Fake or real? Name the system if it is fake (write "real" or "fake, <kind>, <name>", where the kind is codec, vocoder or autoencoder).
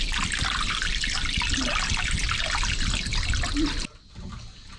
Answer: real